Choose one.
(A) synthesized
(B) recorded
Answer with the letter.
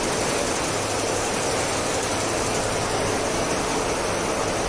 B